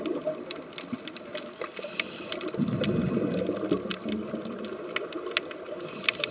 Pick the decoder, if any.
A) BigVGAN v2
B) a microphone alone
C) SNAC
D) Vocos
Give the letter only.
B